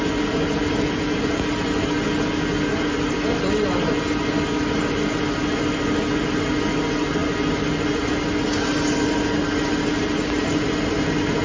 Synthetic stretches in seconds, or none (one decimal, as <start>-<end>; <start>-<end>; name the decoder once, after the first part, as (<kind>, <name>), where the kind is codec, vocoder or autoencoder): none